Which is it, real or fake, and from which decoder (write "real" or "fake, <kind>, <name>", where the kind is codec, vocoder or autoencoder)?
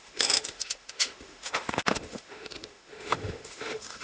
fake, autoencoder, DAC-VAE